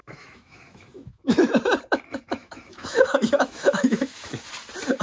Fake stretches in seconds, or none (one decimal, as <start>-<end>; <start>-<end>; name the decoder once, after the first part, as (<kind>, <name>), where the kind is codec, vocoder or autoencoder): 0.0-1.5 (autoencoder, DAC-VAE); 2.4-4.3